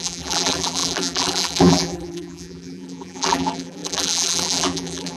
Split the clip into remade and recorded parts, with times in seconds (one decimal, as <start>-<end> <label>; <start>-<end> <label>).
0.0-5.2 remade